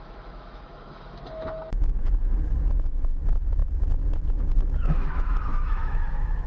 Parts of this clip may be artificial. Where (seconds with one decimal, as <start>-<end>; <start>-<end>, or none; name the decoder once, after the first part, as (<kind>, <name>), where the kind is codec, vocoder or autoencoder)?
0.0-3.6 (autoencoder, DAC-VAE); 4.5-6.5